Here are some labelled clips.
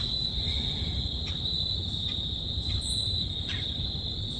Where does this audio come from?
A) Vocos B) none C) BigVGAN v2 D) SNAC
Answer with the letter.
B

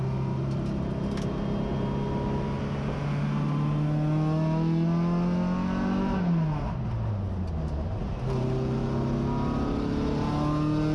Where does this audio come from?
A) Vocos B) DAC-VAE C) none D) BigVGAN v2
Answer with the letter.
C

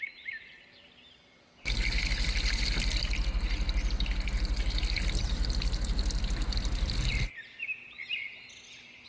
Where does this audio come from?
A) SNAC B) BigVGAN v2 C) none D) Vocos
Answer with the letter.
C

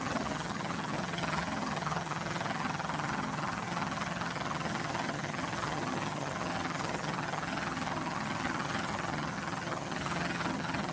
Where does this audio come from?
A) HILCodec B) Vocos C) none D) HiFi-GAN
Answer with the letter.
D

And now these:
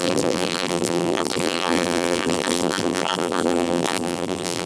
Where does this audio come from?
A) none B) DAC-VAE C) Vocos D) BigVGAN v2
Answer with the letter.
D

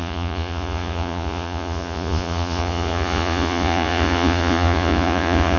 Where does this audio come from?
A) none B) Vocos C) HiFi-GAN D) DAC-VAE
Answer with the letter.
B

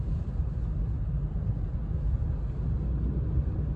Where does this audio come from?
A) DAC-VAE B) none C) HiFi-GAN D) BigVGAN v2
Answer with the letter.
B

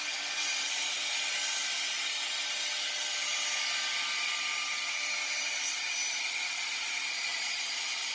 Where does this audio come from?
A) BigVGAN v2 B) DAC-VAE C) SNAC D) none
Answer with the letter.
D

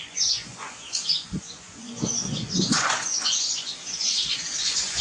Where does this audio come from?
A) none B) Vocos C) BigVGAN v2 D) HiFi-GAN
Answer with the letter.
B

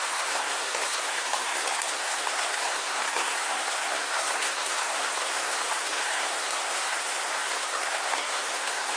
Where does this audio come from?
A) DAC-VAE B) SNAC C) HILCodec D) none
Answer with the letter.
B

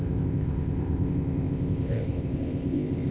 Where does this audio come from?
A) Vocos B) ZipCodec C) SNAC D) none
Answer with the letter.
B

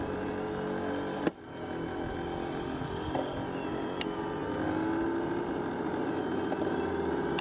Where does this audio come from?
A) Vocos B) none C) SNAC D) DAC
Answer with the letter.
B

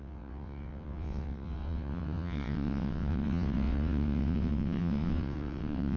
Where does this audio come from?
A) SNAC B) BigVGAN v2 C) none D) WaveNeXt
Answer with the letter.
D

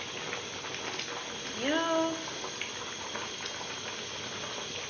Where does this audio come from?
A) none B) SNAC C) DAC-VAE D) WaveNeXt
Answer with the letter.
A